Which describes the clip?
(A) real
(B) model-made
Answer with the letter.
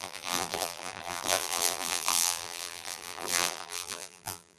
B